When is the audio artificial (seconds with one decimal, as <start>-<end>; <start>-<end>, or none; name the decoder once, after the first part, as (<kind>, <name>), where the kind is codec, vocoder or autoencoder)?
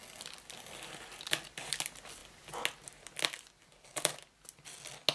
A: none